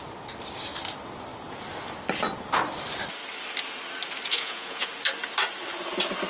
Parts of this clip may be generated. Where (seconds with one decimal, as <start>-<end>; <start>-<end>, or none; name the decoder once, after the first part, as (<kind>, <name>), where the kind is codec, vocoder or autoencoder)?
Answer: 4.3-4.9 (vocoder, Vocos)